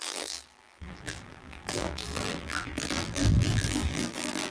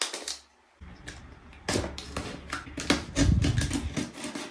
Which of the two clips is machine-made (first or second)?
first